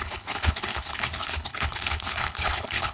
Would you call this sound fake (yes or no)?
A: yes